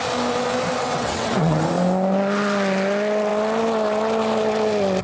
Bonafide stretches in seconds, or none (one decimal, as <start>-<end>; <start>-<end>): 0.0-0.8; 1.6-5.0